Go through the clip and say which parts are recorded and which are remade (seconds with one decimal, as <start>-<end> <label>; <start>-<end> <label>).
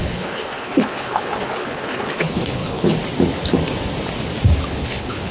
0.0-2.9 remade; 2.9-4.7 recorded; 4.7-5.3 remade